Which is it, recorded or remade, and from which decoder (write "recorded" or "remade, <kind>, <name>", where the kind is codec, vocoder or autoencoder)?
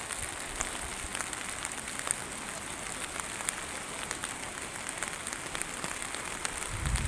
recorded